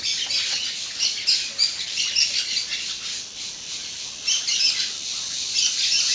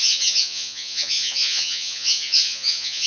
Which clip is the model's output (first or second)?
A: second